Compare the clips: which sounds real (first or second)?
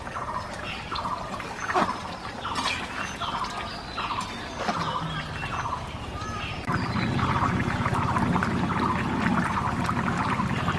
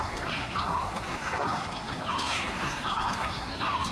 first